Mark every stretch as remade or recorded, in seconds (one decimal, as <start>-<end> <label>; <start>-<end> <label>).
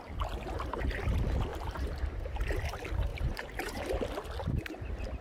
0.0-1.5 recorded; 1.5-2.6 remade; 2.6-3.1 recorded; 3.1-3.7 remade; 3.7-5.2 recorded